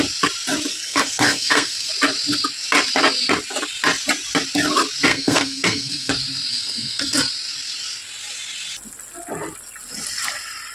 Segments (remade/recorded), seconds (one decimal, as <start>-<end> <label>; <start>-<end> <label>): 0.0-0.7 recorded; 0.7-1.9 remade; 1.9-5.1 recorded; 5.1-6.1 remade; 6.1-6.5 recorded; 6.5-7.2 remade; 7.2-10.7 recorded